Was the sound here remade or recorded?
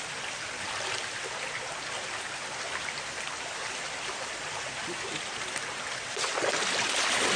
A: recorded